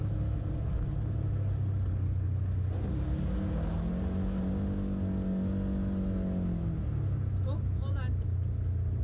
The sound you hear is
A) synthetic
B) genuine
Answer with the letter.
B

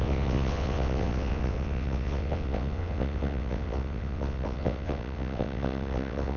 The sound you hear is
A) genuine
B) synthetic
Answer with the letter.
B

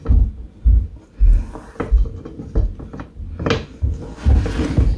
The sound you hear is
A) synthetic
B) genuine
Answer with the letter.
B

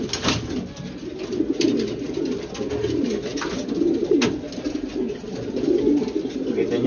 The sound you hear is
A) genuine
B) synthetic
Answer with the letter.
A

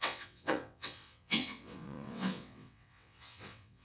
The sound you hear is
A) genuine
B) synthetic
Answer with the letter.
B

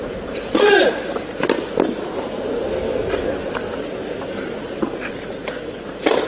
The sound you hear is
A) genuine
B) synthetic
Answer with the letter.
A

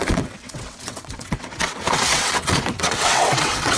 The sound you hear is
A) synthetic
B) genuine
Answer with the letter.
A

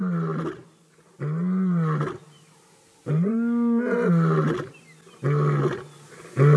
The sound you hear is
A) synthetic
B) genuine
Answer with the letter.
B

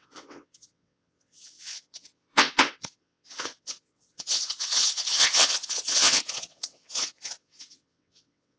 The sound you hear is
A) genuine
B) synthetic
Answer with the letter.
B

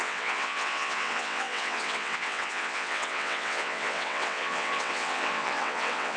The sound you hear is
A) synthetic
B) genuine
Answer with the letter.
A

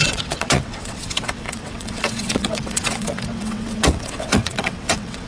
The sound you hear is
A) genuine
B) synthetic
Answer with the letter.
B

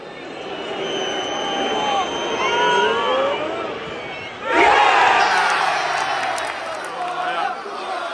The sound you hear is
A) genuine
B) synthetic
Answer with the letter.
A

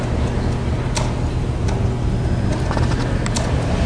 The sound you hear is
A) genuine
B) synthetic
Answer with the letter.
A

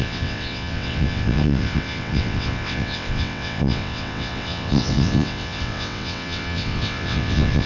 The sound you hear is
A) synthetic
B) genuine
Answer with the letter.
A